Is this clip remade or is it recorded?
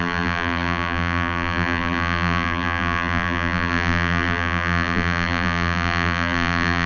remade